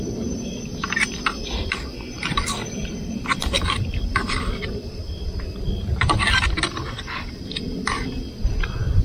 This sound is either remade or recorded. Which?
recorded